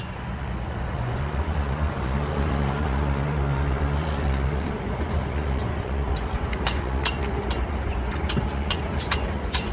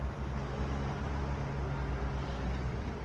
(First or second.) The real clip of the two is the second